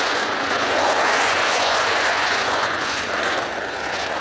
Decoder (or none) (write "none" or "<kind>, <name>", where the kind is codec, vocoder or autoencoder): vocoder, Vocos